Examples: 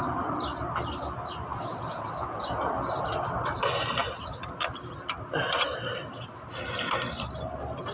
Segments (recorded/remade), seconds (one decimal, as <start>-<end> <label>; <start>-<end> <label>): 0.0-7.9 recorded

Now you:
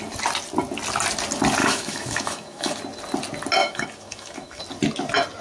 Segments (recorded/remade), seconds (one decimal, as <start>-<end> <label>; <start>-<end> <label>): 0.0-1.6 recorded; 1.6-2.8 remade; 2.8-3.6 recorded; 3.6-4.6 remade; 4.6-5.4 recorded

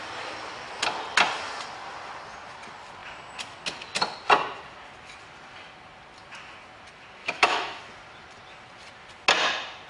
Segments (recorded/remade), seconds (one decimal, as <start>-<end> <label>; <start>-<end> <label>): 0.0-7.2 recorded; 7.2-7.8 remade; 7.8-9.9 recorded

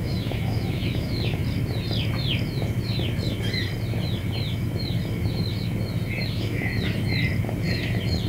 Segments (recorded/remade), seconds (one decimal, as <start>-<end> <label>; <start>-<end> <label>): 0.0-1.4 remade; 1.4-6.2 recorded; 6.2-6.7 remade; 6.7-8.3 recorded

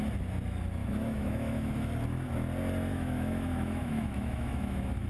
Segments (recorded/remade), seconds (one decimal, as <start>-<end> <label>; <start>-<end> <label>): 0.0-0.8 recorded; 0.8-1.9 remade; 1.9-2.9 recorded; 2.9-5.1 remade